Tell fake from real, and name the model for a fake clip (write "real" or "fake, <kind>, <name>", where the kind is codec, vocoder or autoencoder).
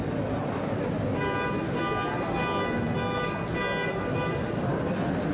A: real